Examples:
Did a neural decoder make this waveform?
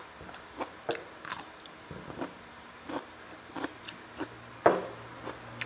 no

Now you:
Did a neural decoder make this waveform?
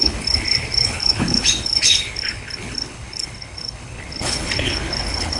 yes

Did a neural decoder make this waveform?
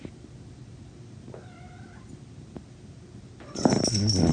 no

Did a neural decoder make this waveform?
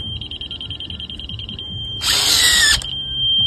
no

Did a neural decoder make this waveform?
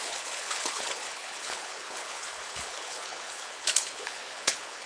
yes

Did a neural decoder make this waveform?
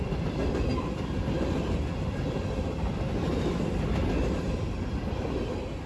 no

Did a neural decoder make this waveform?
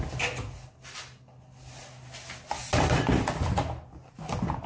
no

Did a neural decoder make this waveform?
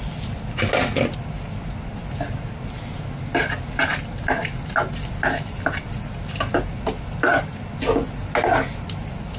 no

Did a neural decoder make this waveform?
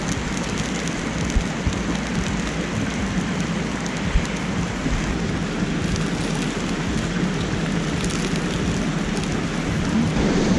no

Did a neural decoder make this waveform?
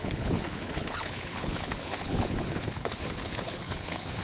yes